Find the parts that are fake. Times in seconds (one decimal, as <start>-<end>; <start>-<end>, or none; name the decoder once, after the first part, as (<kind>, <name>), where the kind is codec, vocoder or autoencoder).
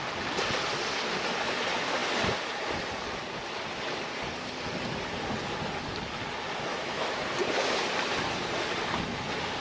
6.7-7.2 (autoencoder, DAC-VAE)